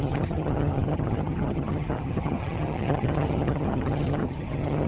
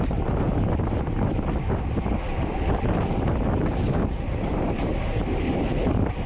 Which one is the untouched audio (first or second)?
second